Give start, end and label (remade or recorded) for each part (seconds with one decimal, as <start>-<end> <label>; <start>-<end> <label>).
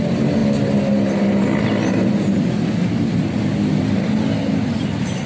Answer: 0.0-5.3 recorded